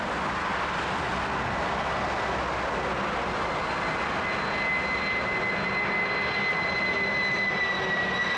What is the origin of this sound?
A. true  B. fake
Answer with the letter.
A